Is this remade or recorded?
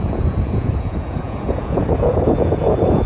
remade